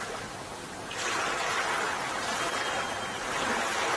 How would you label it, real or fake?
real